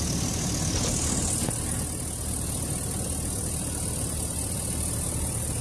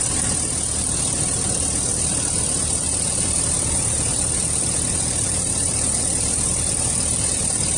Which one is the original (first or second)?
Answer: first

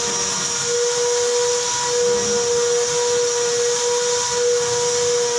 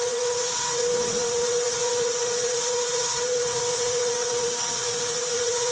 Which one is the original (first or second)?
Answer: first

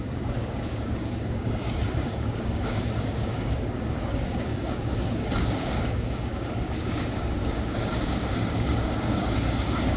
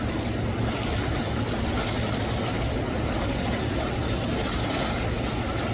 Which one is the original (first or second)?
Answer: second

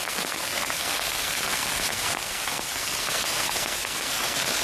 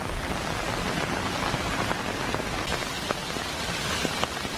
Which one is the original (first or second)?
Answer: second